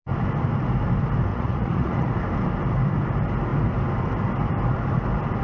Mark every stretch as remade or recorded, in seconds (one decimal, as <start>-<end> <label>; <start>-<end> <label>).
0.0-1.3 recorded; 1.3-2.1 remade; 2.1-5.4 recorded

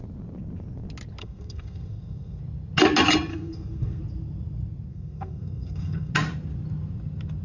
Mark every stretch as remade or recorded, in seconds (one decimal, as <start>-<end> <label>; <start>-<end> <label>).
0.0-1.2 recorded; 1.2-2.4 remade; 2.4-3.3 recorded; 3.3-4.0 remade; 4.0-4.9 recorded; 4.9-6.1 remade; 6.1-7.4 recorded

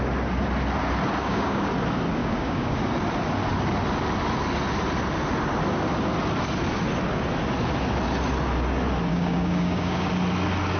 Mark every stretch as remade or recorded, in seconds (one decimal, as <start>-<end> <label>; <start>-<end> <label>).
0.0-1.2 recorded; 1.2-1.7 remade; 1.7-2.2 recorded; 2.2-2.8 remade; 2.8-9.1 recorded; 9.1-10.1 remade; 10.1-10.8 recorded